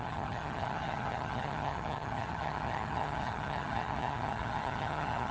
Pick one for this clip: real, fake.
fake